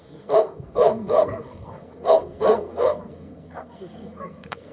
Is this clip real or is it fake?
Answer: fake